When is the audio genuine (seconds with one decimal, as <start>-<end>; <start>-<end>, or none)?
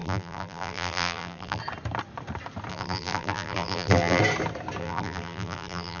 1.6-2.7; 4.2-4.8